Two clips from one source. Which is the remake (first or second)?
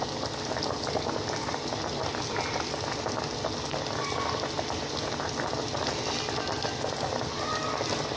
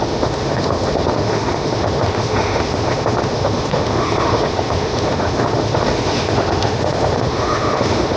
second